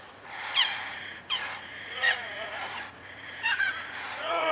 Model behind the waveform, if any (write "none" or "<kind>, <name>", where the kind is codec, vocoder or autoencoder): vocoder, Vocos